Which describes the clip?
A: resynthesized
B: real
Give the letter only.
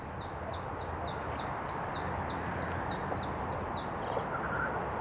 B